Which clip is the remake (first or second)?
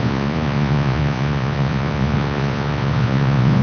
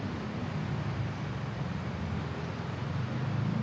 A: first